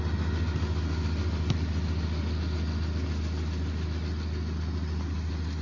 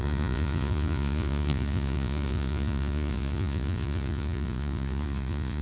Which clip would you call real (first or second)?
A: first